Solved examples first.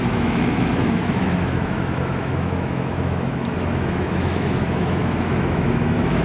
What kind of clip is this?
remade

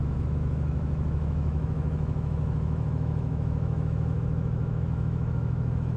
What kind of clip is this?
remade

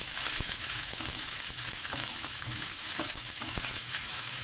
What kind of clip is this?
remade